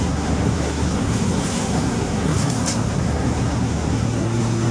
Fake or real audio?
fake